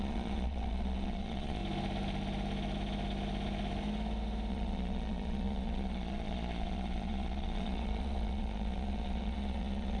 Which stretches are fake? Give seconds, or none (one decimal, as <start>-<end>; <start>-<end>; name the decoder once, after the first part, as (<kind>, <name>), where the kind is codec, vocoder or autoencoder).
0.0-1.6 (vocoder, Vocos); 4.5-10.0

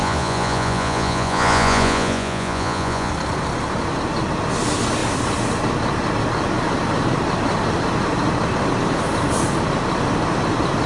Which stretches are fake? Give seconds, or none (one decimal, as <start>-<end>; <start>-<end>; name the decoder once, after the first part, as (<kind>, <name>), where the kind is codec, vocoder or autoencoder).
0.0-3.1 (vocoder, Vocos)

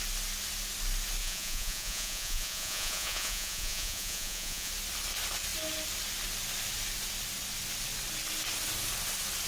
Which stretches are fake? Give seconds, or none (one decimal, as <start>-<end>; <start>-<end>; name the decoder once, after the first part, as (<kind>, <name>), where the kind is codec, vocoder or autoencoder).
1.2-4.7 (vocoder, Vocos)

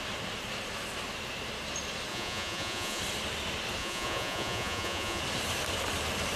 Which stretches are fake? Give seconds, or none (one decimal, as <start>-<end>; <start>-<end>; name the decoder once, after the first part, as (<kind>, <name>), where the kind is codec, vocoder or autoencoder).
2.1-3.0 (vocoder, Vocos); 3.8-5.2

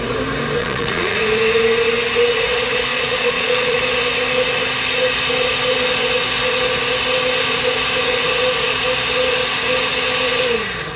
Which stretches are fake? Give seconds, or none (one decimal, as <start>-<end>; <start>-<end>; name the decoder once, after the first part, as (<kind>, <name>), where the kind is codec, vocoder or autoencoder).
0.6-1.2 (vocoder, Vocos); 2.9-3.8

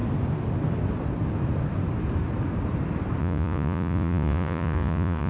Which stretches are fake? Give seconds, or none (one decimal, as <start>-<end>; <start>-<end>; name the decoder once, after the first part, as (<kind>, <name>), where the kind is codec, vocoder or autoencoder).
3.2-5.3 (vocoder, Vocos)

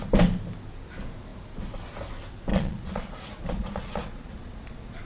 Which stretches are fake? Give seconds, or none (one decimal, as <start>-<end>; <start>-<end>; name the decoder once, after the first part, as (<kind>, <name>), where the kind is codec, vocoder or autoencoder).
2.5-5.0 (vocoder, Vocos)